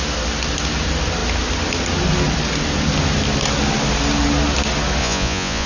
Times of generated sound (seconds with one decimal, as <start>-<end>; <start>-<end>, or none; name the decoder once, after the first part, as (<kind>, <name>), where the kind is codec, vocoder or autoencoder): 5.0-5.7 (vocoder, Vocos)